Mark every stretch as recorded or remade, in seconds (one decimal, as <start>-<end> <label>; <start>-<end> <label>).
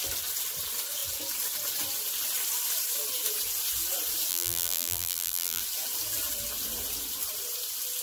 0.0-4.3 recorded; 4.3-5.6 remade; 5.6-8.0 recorded